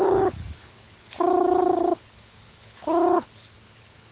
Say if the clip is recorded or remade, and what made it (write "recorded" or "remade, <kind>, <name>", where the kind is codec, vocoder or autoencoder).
remade, codec, HILCodec